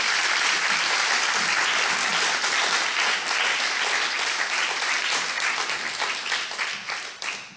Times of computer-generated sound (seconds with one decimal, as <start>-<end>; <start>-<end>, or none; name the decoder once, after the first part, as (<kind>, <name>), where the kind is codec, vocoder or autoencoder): none